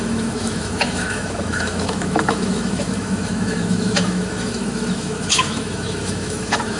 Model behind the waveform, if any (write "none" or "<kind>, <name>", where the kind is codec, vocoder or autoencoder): autoencoder, DAC-VAE